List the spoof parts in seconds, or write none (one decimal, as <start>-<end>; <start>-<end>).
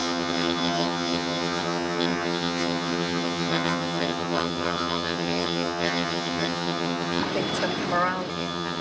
0.0-7.2; 8.3-8.8